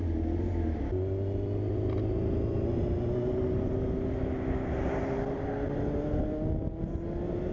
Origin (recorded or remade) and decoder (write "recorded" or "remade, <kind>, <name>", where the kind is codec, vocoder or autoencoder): recorded